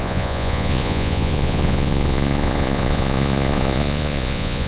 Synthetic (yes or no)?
yes